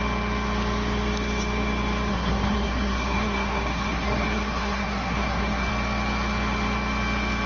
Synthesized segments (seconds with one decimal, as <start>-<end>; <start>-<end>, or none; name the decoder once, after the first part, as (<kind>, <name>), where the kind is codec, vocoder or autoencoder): 2.1-5.7 (codec, SNAC)